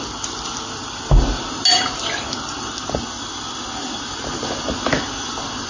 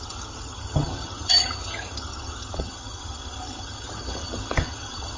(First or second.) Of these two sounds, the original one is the first